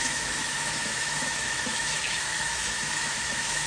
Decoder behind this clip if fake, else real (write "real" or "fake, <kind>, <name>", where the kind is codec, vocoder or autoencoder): fake, autoencoder, DAC-VAE